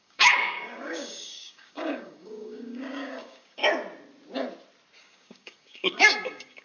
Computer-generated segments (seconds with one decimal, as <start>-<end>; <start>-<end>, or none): 0.0-3.6; 5.0-6.6